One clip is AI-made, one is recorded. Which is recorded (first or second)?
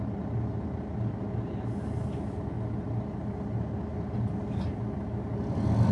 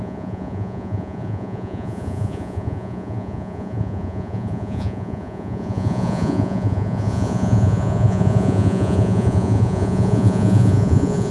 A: first